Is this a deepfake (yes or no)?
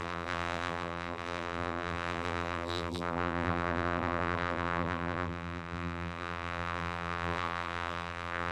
yes